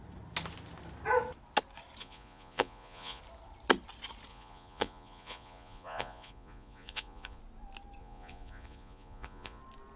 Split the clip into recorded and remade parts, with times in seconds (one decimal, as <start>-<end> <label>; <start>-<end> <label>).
0.0-2.0 recorded; 2.0-3.2 remade; 3.2-4.3 recorded; 4.3-7.4 remade; 7.4-8.0 recorded; 8.0-9.6 remade; 9.6-10.0 recorded